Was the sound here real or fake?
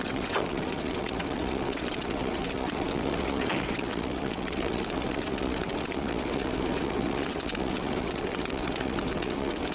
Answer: fake